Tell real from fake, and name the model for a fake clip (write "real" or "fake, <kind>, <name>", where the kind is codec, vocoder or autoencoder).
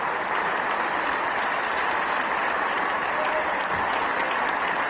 real